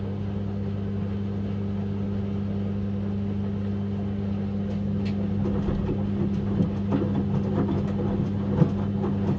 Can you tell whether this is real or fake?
real